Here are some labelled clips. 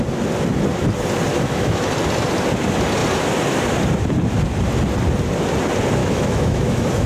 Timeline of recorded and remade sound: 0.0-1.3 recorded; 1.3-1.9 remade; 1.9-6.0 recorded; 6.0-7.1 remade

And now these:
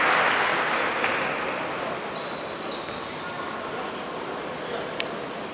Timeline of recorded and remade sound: 0.0-5.5 recorded

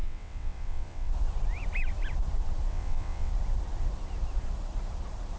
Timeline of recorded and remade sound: 0.0-1.1 remade; 1.1-2.7 recorded; 2.7-3.3 remade; 3.3-5.4 recorded

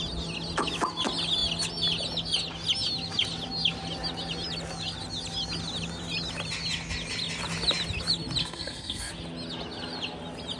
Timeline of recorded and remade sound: 0.0-8.4 recorded; 8.4-9.1 remade; 9.1-10.6 recorded